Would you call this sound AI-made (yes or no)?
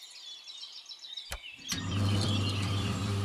yes